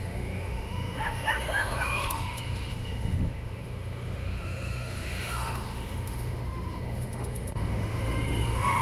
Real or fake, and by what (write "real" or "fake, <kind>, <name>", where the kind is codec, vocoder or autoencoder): fake, autoencoder, DAC-VAE